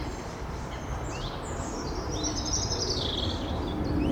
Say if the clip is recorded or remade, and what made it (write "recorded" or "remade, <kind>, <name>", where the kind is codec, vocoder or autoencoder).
remade, vocoder, BigVGAN v2